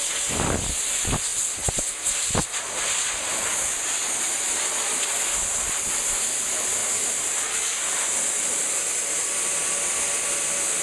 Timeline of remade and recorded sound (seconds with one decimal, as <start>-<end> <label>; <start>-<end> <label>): 0.0-10.8 recorded